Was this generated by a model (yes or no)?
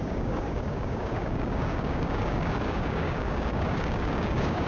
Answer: yes